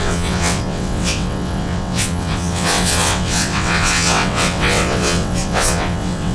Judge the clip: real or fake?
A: fake